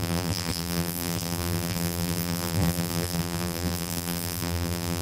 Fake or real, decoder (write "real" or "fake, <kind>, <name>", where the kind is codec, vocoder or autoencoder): fake, vocoder, BigVGAN v2